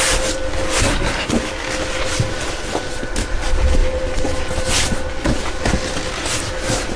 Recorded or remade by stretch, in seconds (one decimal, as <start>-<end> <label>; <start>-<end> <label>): 0.0-0.8 recorded; 0.8-1.3 remade; 1.3-7.0 recorded